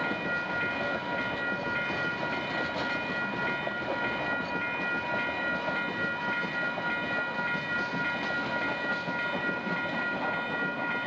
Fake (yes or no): no